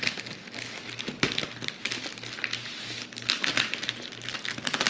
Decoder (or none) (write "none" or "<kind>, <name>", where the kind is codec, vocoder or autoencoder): none